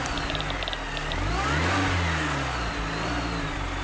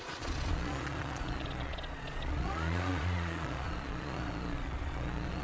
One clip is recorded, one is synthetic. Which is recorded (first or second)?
first